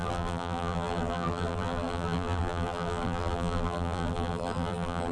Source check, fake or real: fake